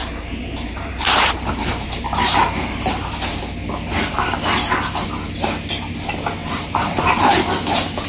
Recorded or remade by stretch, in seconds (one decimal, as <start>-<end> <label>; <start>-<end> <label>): 0.0-3.4 remade; 3.4-6.4 recorded; 6.4-7.5 remade; 7.5-8.1 recorded